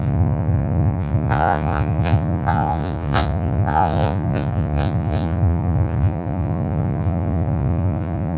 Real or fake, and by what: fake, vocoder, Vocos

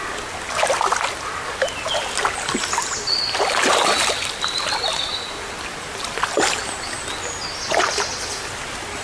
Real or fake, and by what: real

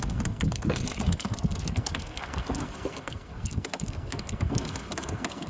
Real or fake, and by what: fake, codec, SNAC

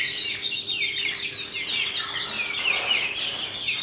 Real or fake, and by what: real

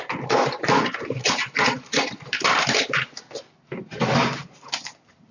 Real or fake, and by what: real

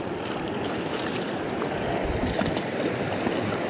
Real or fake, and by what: real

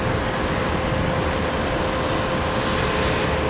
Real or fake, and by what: real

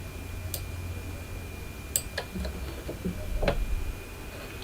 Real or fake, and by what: real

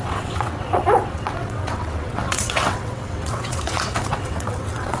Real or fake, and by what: fake, vocoder, WaveNeXt